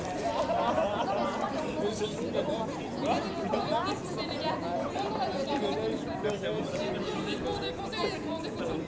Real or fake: real